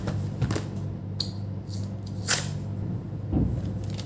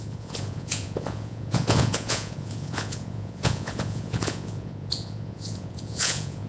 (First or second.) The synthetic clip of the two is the second